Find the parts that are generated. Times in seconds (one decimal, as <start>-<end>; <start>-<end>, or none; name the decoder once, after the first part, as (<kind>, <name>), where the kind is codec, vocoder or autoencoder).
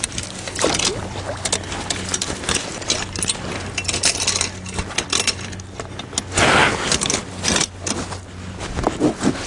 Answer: none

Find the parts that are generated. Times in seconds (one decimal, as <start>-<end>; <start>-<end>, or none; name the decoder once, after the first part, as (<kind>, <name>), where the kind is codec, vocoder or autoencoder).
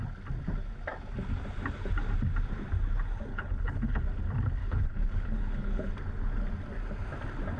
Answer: 3.3-4.0 (codec, HILCodec); 4.6-5.9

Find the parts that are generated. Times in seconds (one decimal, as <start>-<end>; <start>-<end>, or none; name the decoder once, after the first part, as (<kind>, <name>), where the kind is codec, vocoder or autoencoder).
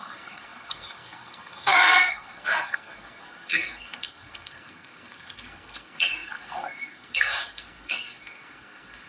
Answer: 0.0-9.1 (codec, SNAC)